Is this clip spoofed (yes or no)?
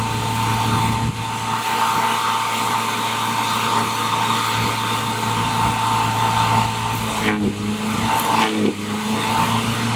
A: no